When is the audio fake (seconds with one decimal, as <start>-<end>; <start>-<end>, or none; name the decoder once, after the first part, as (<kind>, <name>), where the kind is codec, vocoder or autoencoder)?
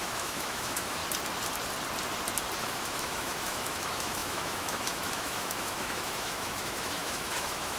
0.0-1.0 (autoencoder, DAC-VAE); 2.6-7.8